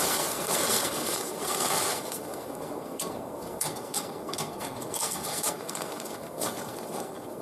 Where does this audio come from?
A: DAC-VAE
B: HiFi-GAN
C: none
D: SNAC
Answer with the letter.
D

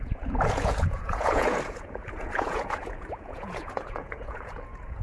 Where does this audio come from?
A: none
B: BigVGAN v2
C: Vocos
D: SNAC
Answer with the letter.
C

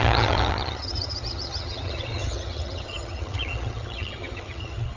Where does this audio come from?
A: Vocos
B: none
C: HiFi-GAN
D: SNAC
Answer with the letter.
C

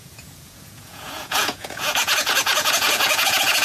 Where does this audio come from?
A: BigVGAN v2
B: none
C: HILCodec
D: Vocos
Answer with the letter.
D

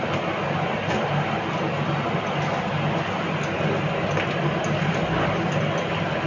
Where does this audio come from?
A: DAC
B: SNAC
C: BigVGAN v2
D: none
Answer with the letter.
D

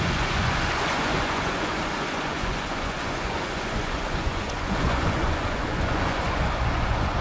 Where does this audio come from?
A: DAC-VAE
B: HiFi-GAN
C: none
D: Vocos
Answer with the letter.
D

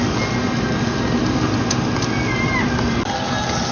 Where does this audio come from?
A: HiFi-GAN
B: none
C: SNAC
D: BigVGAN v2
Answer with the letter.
B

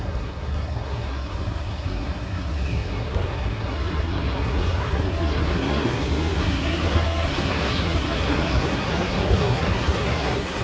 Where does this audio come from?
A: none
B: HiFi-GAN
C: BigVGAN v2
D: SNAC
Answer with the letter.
D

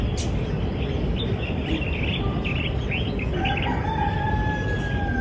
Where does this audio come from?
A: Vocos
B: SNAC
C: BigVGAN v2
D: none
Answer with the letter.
D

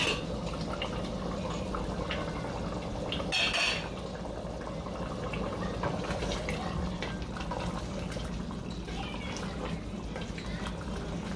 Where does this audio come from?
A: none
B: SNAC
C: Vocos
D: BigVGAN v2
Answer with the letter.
A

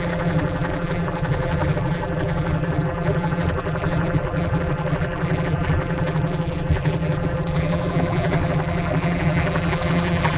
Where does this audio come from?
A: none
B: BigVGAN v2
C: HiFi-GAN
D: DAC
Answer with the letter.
B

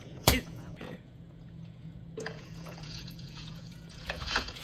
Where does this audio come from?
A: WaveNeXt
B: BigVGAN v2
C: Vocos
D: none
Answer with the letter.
C